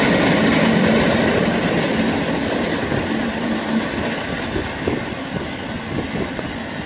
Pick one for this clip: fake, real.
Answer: real